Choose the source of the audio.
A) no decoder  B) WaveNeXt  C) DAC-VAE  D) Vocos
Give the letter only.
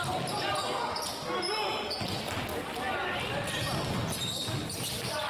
A